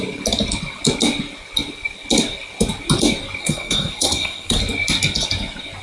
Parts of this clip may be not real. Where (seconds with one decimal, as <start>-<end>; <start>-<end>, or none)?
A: 3.4-4.6